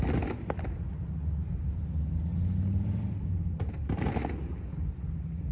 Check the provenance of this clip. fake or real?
real